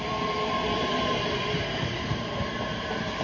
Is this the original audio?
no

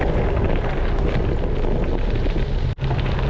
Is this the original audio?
yes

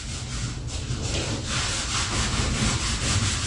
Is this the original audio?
yes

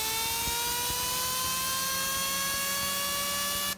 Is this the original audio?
yes